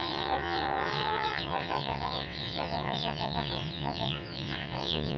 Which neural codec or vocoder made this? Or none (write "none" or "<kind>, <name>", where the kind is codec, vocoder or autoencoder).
vocoder, WaveNeXt